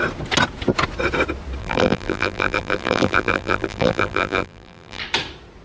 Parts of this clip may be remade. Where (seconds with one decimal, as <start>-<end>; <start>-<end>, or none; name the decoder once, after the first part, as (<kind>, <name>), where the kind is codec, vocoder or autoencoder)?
1.6-5.0 (vocoder, BigVGAN v2)

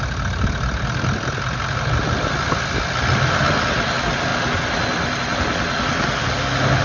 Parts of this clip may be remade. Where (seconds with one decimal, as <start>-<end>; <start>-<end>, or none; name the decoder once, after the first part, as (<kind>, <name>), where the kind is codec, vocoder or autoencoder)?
none

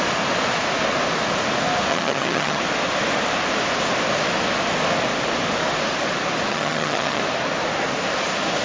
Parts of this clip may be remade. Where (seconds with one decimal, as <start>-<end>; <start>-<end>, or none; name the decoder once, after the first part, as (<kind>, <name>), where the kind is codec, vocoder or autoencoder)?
1.9-2.6 (vocoder, HiFi-GAN); 6.5-7.2

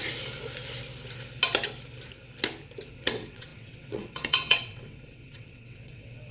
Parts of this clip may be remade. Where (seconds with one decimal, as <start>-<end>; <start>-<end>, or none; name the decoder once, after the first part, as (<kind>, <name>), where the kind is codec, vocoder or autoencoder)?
2.9-6.3 (vocoder, WaveNeXt)